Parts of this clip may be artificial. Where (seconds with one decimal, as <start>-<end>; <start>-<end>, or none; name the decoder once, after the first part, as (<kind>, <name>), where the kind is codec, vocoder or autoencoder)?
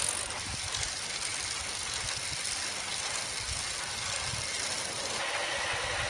none